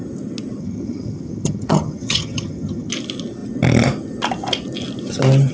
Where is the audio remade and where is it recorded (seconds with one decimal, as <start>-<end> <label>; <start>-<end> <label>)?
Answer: 0.0-0.6 recorded; 0.6-2.9 remade; 2.9-5.5 recorded